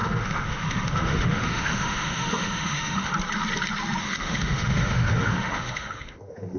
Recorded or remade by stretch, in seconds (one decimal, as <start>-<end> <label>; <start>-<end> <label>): 0.0-3.1 remade; 3.1-4.0 recorded; 4.0-6.6 remade